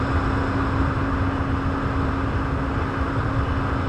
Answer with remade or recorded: recorded